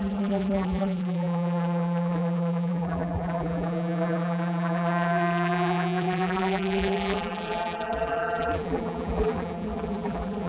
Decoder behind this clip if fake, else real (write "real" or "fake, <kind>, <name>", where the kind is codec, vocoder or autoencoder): fake, vocoder, BigVGAN v2